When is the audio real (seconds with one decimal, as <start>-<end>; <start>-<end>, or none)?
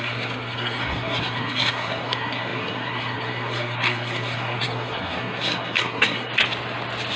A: 6.3-7.2